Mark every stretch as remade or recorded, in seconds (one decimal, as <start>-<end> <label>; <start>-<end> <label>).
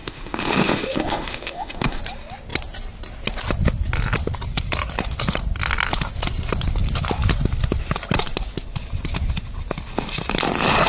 0.0-2.0 remade; 2.0-10.9 recorded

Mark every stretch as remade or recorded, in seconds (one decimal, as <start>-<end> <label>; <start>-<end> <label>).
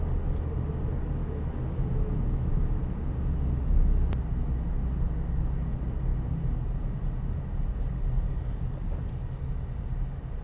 0.0-1.2 recorded; 1.2-3.1 remade; 3.1-10.4 recorded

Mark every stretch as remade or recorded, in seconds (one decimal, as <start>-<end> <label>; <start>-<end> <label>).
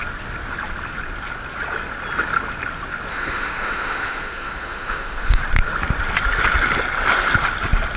0.0-3.1 recorded; 3.1-5.4 remade; 5.4-8.0 recorded